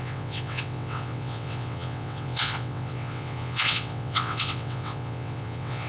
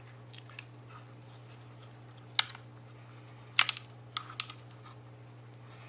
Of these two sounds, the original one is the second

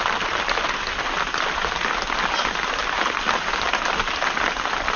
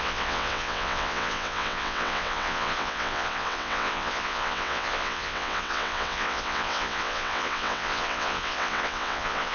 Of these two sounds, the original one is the first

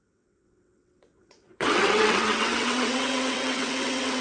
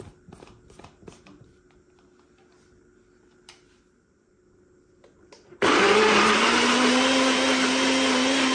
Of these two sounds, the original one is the second